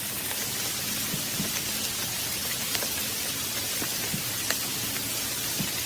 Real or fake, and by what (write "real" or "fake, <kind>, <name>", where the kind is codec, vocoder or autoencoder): real